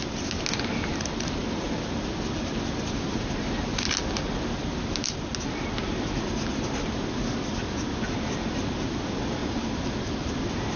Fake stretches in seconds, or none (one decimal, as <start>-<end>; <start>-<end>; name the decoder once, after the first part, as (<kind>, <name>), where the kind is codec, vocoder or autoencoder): 9.4-10.3 (vocoder, BigVGAN v2)